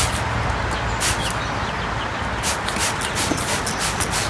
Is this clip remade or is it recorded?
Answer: recorded